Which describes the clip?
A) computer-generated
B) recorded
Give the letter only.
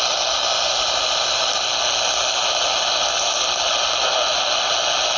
B